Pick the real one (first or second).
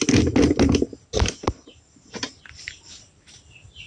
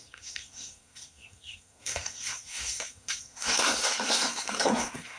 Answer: first